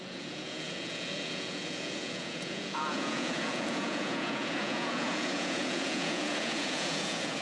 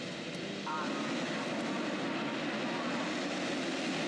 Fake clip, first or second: first